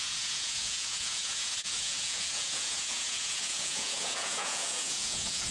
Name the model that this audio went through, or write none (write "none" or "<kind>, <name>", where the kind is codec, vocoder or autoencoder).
vocoder, Vocos